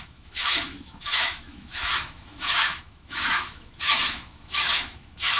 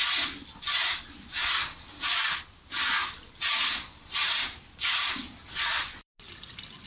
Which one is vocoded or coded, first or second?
first